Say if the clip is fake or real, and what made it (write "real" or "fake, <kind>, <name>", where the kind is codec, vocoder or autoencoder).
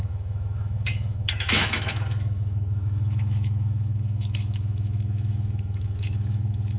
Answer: fake, autoencoder, DAC-VAE